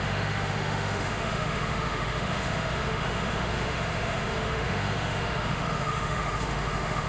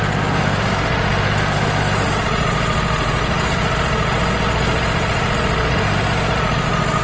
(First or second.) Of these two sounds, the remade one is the first